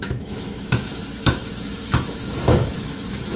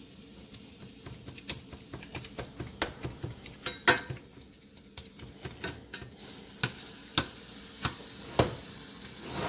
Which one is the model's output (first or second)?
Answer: first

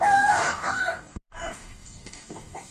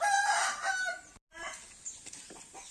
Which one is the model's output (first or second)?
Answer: first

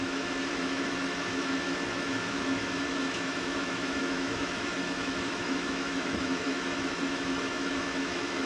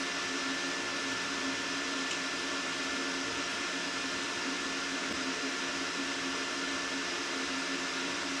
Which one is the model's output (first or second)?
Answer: first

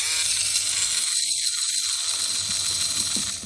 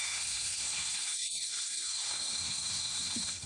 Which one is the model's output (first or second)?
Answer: second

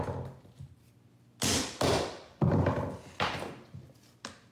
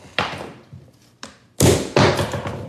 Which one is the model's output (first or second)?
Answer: second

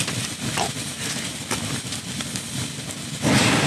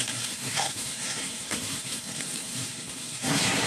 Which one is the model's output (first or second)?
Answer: second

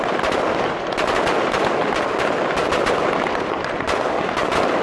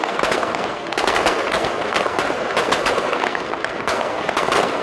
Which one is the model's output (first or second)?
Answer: second